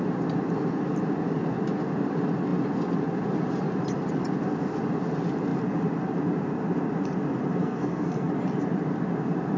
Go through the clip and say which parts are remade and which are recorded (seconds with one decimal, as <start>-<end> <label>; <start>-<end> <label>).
0.0-7.6 recorded; 7.6-8.3 remade; 8.3-9.6 recorded